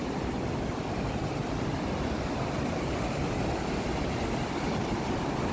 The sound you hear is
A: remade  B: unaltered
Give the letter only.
B